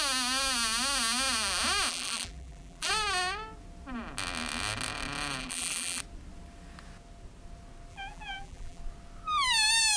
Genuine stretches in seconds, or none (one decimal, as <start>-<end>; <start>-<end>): 0.0-1.9; 2.9-5.4; 6.0-7.9; 8.8-10.0